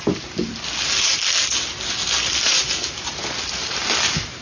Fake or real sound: real